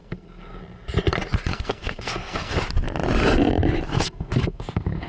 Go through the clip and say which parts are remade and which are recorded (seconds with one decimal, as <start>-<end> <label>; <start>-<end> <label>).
0.0-0.6 remade; 0.6-1.5 recorded; 1.5-2.5 remade; 2.5-3.9 recorded; 3.9-5.1 remade